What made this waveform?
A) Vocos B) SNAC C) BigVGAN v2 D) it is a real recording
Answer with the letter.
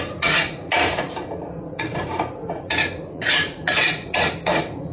A